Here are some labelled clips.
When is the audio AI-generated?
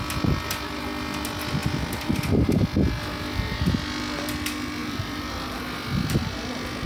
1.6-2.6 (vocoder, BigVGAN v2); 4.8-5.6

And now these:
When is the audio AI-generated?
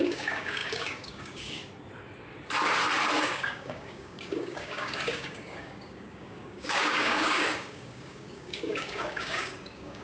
0.0-1.6 (codec, DAC); 3.2-10.0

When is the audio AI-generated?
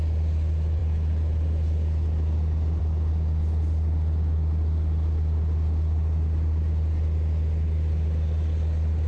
none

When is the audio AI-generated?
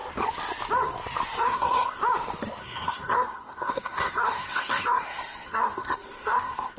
1.4-2.0 (codec, SNAC); 2.6-6.8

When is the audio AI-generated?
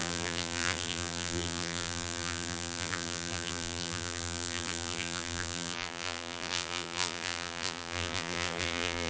0.0-9.1 (vocoder, BigVGAN v2)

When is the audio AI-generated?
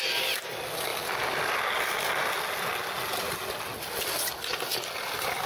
none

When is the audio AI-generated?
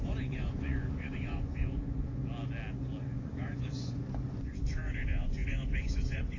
0.0-2.2 (vocoder, Vocos); 3.0-6.4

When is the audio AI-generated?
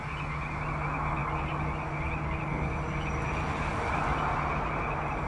none